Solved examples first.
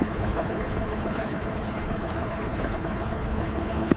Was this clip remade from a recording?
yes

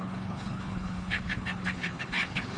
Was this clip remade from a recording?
yes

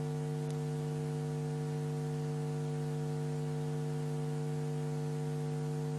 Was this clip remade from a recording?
no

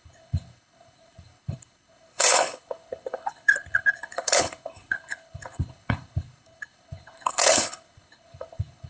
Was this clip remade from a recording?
yes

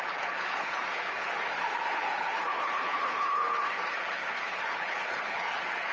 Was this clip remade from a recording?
yes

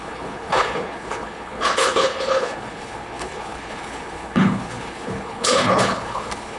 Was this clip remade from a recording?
yes